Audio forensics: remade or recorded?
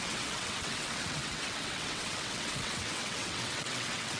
remade